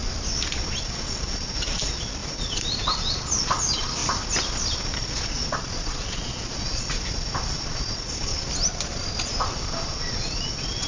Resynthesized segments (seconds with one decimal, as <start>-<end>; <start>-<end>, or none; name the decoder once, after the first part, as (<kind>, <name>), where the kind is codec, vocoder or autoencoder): 0.8-4.0 (vocoder, Vocos); 5.1-8.3; 9.1-10.9